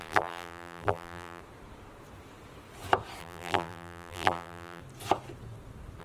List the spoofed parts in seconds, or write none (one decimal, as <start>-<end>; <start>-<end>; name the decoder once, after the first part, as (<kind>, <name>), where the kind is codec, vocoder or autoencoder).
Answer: 0.0-1.4 (vocoder, BigVGAN v2); 3.2-4.8